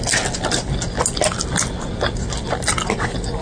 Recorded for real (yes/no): yes